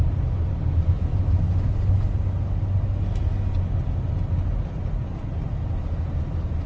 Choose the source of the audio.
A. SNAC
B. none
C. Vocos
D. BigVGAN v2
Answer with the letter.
B